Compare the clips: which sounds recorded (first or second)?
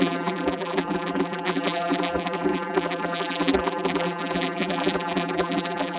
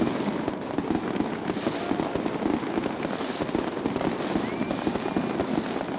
second